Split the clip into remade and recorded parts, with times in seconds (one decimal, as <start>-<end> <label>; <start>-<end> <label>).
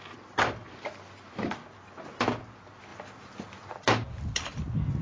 0.0-5.0 recorded